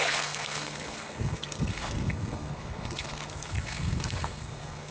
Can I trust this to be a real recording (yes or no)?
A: no